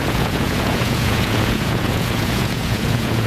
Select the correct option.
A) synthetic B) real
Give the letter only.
A